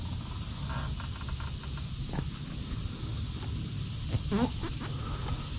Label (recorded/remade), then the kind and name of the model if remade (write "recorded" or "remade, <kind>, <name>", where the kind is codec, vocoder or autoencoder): recorded